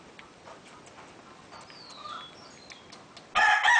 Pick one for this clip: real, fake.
real